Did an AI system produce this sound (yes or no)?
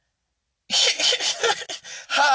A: no